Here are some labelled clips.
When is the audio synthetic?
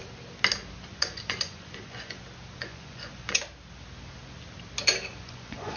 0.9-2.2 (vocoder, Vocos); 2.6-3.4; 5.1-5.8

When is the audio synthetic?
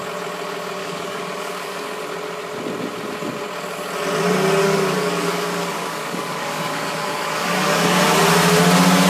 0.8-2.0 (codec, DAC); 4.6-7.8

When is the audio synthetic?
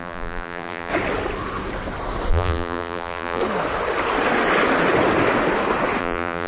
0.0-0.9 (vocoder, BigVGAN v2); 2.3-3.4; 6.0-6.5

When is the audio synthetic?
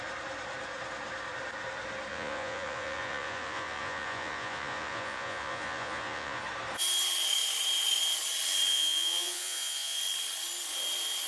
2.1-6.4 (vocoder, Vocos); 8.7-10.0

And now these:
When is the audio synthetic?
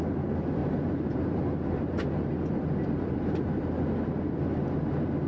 0.6-3.8 (vocoder, BigVGAN v2)